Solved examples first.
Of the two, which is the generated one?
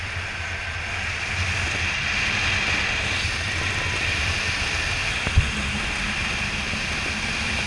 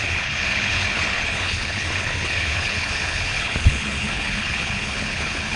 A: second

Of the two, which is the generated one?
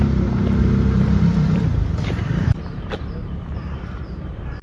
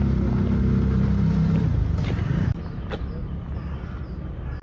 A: first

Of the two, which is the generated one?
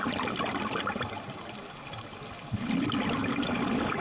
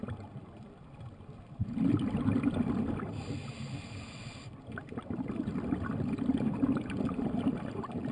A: second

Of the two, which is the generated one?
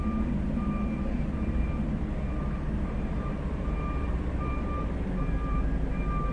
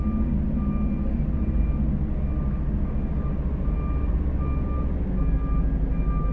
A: first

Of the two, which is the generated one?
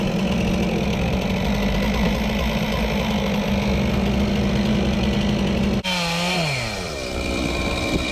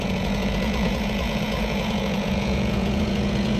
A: second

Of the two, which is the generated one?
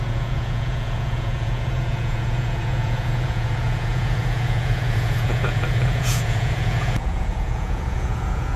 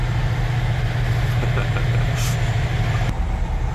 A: first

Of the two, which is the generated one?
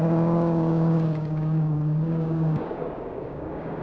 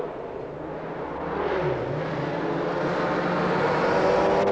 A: first